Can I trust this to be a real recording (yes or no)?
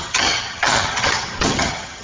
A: no